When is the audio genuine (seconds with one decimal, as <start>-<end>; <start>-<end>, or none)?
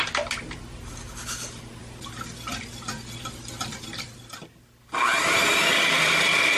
0.0-6.6